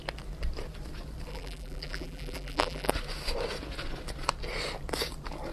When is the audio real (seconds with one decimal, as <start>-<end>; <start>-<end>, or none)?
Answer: 0.0-1.3; 2.9-5.5